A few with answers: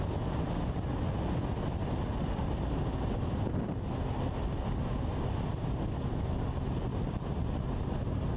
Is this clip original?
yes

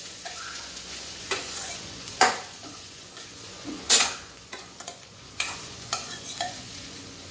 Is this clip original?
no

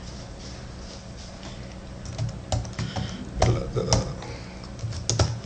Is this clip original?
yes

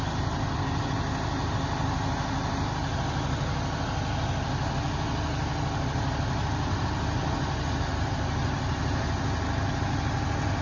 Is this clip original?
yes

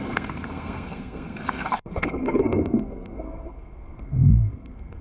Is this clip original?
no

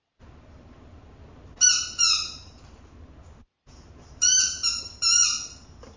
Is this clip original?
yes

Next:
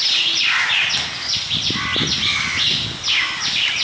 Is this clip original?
yes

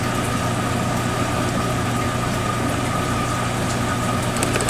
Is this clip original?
yes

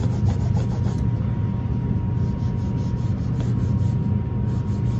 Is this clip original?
yes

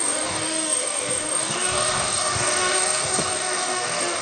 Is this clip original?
no